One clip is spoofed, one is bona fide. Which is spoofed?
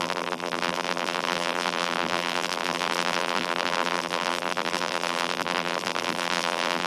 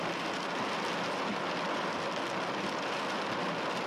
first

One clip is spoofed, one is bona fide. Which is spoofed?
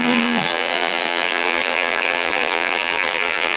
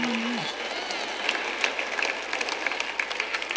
first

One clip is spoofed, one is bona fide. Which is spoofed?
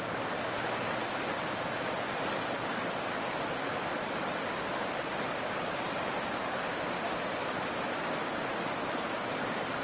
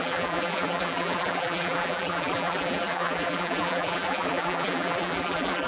second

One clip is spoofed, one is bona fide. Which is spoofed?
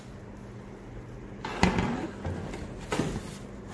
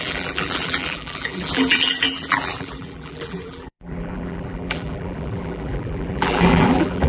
second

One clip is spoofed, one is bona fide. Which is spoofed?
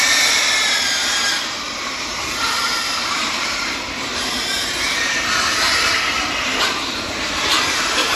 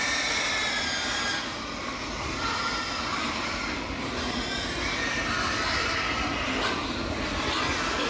first